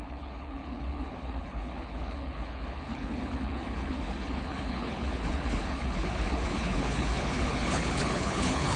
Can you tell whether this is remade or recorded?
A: remade